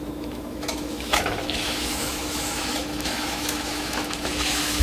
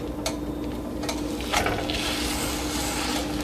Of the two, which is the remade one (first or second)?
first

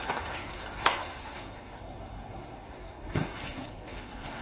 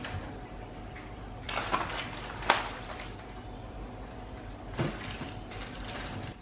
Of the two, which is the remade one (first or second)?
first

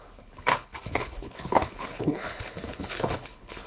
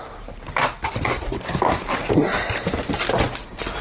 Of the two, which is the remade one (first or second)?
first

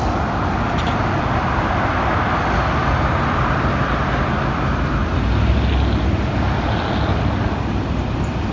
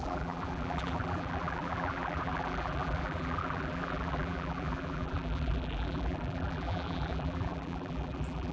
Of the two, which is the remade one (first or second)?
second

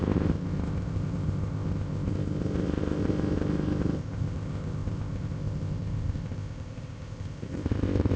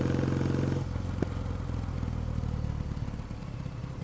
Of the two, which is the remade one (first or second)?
first